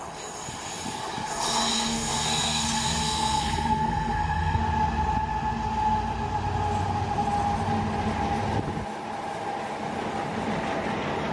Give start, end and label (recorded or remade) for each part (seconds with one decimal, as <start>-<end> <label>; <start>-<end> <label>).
0.0-1.7 recorded; 1.7-4.6 remade; 4.6-11.3 recorded